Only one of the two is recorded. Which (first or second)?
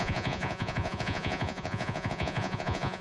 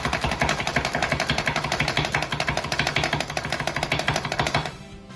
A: second